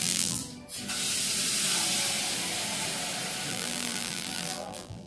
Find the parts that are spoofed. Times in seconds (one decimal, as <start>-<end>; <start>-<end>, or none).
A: 0.0-0.4; 3.5-5.1